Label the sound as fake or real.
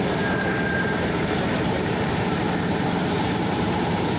fake